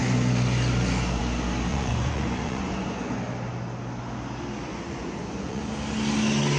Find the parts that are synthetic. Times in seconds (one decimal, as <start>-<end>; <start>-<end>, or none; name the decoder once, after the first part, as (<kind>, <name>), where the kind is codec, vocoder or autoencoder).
1.7-3.2 (vocoder, Vocos); 4.7-5.7